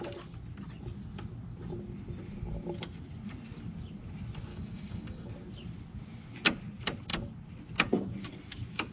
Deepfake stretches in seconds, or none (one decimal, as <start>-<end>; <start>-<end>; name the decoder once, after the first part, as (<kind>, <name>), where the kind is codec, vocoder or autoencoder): 4.5-5.3 (codec, DAC)